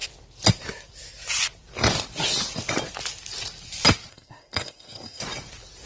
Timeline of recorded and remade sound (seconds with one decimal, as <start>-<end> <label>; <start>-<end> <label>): 0.0-4.1 recorded; 4.1-5.2 remade; 5.2-5.9 recorded